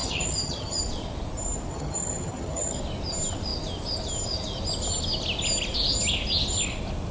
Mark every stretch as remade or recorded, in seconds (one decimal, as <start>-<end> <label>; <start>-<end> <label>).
0.0-0.8 remade; 0.8-1.7 recorded; 1.7-2.8 remade; 2.8-7.1 recorded